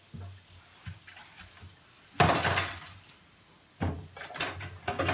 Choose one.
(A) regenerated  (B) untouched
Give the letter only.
B